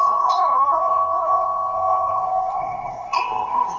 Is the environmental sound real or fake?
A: fake